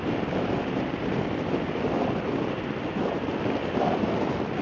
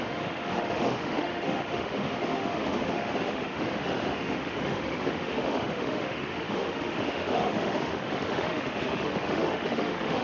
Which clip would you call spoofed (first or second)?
second